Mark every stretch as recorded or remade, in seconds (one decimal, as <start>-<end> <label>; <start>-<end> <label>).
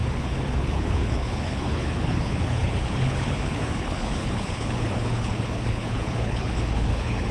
0.0-7.3 remade